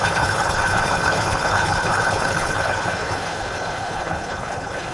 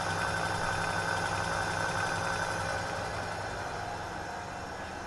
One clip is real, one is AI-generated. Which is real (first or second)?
second